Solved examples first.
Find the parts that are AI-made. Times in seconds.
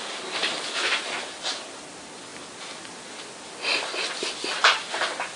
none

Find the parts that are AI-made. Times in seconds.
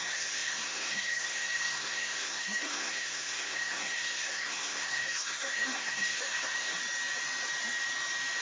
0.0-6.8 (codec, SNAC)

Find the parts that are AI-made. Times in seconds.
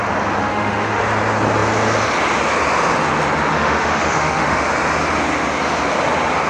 0.4-1.0 (autoencoder, DAC-VAE); 3.5-4.7